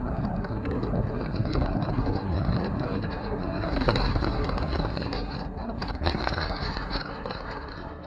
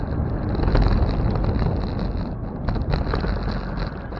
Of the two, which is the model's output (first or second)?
first